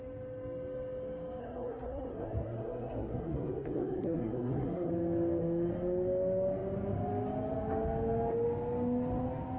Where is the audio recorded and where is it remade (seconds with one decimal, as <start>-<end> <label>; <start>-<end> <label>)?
0.0-1.4 recorded; 1.4-4.9 remade; 4.9-9.6 recorded